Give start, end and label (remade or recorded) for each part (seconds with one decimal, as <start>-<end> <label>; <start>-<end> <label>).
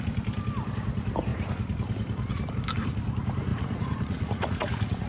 0.0-3.5 recorded; 3.5-5.1 remade